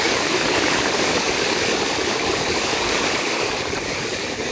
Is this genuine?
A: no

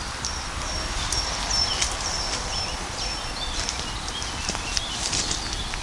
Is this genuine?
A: yes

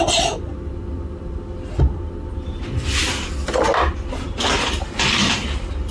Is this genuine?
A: yes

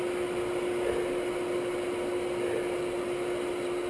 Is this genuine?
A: yes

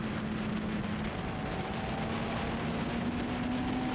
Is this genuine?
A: yes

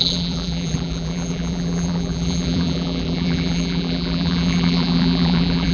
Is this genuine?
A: no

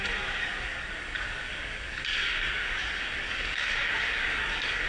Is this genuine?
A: no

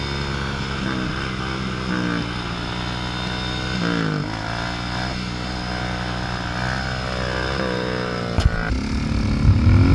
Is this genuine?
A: yes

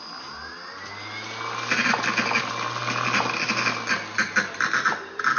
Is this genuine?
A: yes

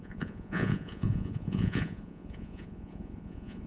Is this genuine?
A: no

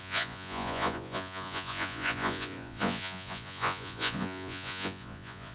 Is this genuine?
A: no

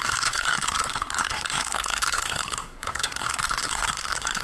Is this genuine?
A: no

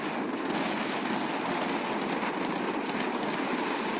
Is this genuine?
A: yes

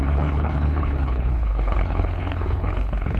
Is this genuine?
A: no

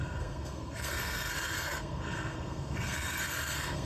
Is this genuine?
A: no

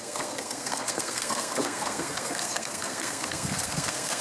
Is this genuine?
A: no